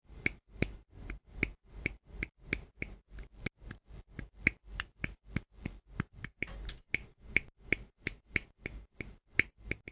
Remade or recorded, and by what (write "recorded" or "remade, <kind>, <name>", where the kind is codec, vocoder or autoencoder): recorded